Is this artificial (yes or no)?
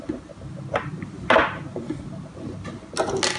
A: no